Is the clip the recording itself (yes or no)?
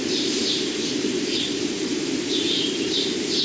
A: no